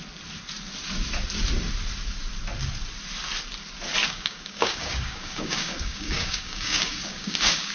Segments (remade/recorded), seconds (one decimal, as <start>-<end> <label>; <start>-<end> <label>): 0.0-4.0 recorded; 4.0-7.7 remade